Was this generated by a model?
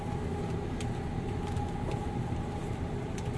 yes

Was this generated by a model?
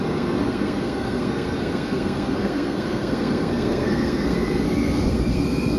yes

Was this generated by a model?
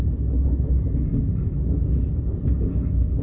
no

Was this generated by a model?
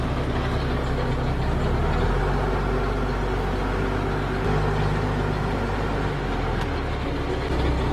no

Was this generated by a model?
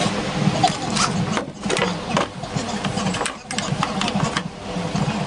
no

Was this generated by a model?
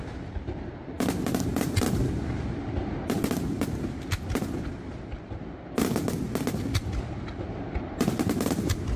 no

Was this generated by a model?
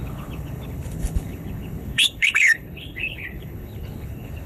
yes